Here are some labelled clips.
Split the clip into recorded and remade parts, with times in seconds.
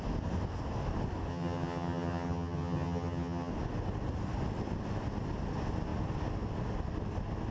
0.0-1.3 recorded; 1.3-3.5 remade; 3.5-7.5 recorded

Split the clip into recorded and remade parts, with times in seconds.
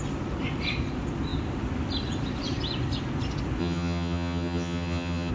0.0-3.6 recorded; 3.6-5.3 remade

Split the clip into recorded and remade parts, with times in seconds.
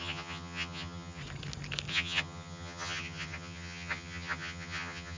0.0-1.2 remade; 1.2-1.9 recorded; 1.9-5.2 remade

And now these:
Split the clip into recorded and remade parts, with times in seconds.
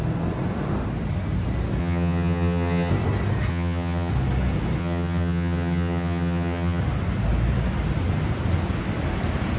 0.0-1.8 recorded; 1.8-2.9 remade; 2.9-3.5 recorded; 3.5-4.1 remade; 4.1-4.8 recorded; 4.8-6.8 remade; 6.8-9.6 recorded